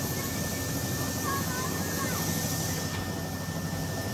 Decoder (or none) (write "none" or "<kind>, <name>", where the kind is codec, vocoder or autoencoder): none